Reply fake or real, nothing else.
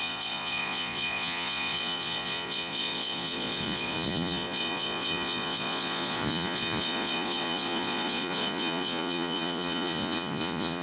fake